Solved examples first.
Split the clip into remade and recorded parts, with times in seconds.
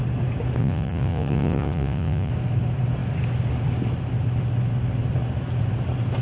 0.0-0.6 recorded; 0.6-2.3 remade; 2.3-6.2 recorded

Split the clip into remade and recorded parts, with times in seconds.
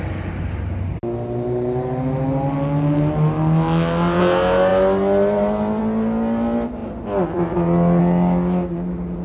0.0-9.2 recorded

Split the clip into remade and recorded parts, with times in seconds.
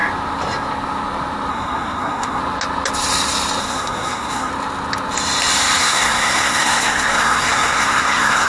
0.0-1.5 recorded; 1.5-2.4 remade; 2.4-3.6 recorded; 3.6-4.5 remade; 4.5-5.8 recorded; 5.8-8.5 remade